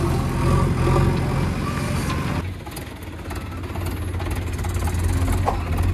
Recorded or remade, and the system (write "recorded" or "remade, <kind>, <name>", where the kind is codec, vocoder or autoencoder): recorded